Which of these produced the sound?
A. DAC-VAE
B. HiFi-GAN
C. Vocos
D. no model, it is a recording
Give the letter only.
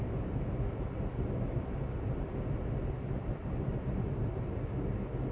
D